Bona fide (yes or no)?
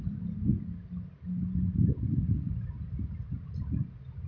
yes